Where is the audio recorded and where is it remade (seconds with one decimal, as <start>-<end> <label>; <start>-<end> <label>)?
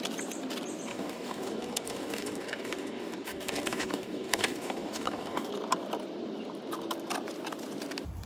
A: 0.0-0.9 recorded; 0.9-5.5 remade; 5.5-8.3 recorded